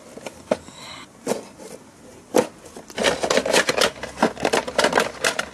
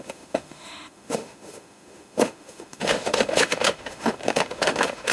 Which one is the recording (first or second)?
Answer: first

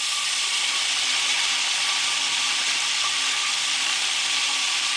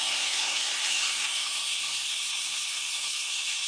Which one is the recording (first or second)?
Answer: first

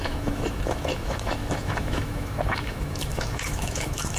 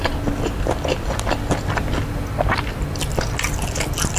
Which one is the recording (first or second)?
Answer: second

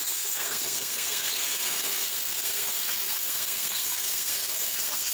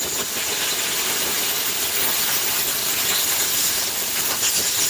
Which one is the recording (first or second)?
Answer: second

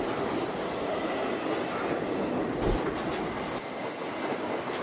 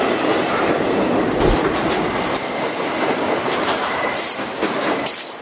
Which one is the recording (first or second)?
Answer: first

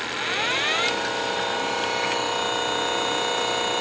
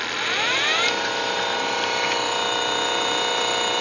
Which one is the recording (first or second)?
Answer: first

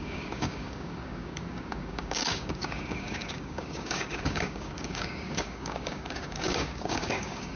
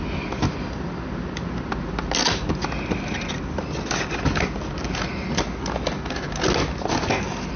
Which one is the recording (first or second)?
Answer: second